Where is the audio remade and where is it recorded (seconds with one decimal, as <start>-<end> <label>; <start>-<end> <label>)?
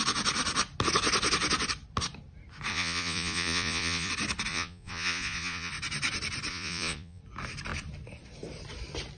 0.0-2.7 recorded; 2.7-4.1 remade; 4.1-4.5 recorded; 4.5-5.7 remade; 5.7-6.5 recorded; 6.5-7.2 remade; 7.2-9.2 recorded